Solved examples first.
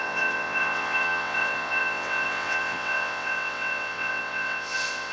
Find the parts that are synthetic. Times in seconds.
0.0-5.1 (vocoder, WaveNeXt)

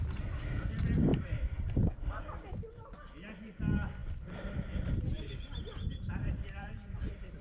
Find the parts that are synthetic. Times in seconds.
1.1-2.2 (vocoder, BigVGAN v2); 4.0-7.4

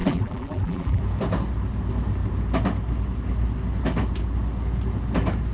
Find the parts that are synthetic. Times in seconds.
0.0-1.0 (vocoder, BigVGAN v2)

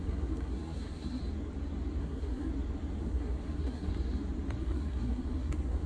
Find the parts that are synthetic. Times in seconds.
0.0-1.2 (codec, SNAC); 2.0-2.5; 3.0-3.9; 4.6-5.9

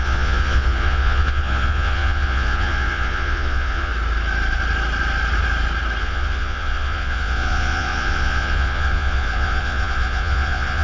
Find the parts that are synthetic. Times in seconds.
0.0-3.9 (vocoder, Vocos); 6.0-10.8